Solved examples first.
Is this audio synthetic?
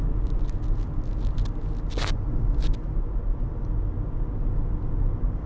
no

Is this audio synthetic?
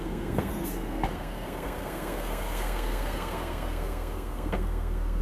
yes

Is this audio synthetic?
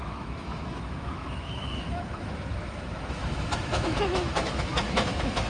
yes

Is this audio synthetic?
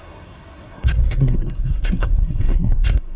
yes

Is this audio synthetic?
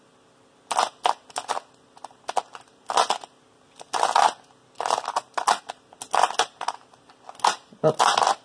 no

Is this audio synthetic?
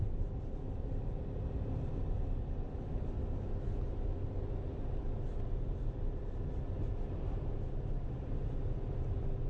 no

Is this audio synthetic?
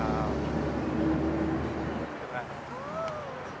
no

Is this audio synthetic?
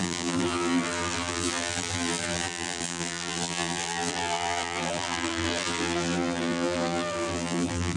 yes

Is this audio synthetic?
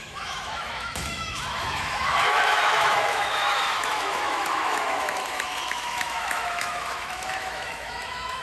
yes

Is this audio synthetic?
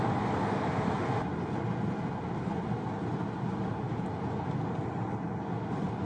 no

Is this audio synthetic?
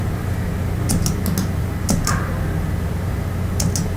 no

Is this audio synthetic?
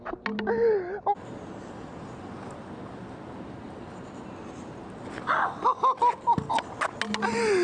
no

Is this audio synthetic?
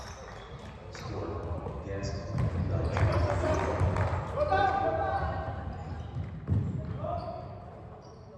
no